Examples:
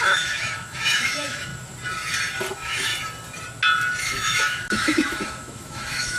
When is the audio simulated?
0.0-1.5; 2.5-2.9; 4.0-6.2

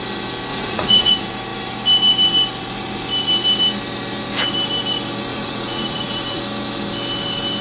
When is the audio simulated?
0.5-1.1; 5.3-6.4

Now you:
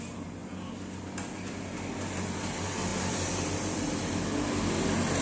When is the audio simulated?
2.9-4.2

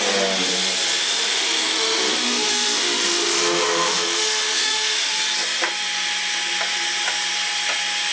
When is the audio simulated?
1.0-5.1

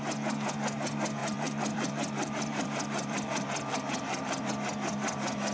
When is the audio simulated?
1.2-4.5

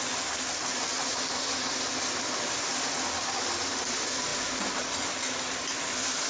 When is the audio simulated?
none